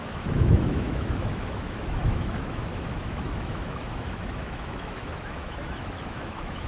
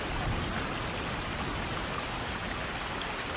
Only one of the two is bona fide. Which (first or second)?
second